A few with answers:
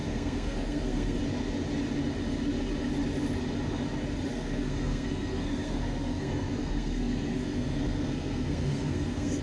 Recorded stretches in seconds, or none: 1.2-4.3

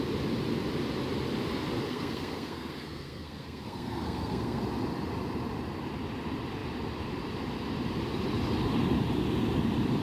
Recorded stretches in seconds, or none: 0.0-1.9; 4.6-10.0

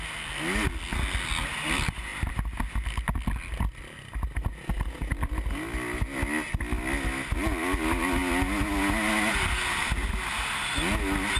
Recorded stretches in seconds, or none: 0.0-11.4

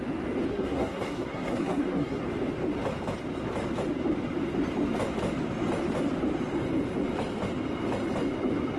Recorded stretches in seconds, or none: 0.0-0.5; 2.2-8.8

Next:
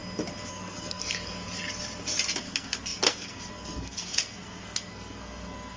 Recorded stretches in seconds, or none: 0.0-0.5; 1.0-2.4

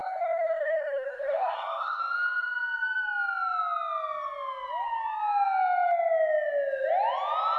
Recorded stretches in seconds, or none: 2.0-7.6